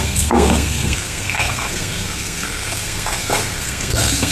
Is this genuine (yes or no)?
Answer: no